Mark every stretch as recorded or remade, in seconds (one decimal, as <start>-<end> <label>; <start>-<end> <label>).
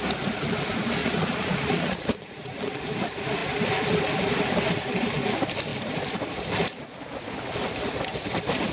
0.0-1.0 recorded; 1.0-2.6 remade; 2.6-8.7 recorded